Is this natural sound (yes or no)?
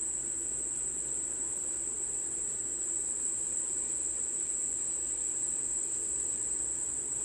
yes